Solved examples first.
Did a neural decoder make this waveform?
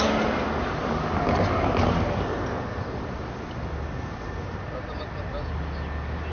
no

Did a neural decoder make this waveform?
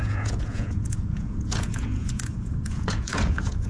yes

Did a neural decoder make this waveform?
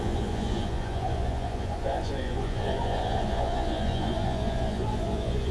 yes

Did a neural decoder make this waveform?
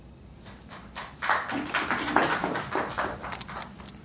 no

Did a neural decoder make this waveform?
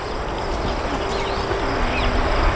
no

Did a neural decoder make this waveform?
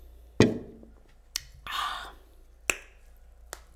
no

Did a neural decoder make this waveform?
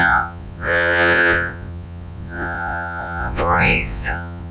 yes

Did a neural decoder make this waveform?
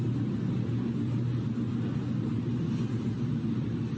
no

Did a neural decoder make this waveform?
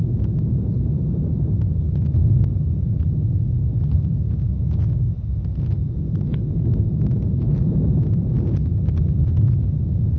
no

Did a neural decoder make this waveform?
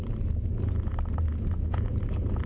no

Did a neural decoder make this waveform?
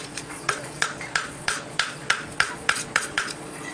yes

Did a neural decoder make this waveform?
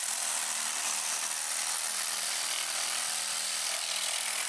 no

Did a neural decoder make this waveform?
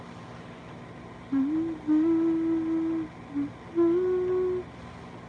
no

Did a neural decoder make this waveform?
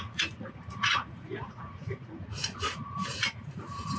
yes